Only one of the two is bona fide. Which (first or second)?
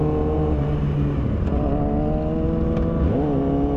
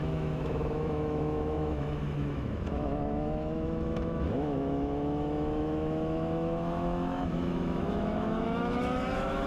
first